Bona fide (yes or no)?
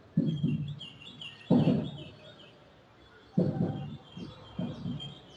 yes